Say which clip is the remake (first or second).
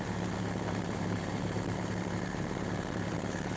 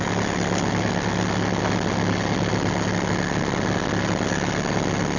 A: first